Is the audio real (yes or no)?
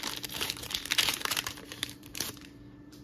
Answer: no